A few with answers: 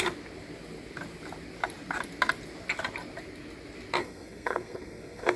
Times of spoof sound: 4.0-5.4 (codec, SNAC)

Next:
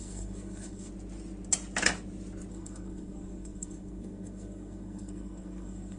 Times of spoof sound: 0.0-0.9 (codec, SNAC); 2.5-6.0

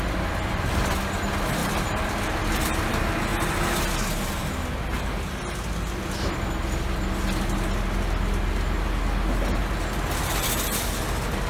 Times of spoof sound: none